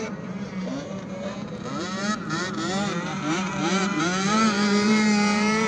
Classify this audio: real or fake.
fake